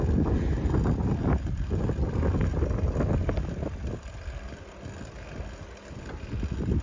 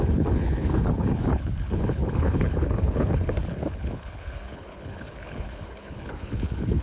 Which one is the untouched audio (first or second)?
first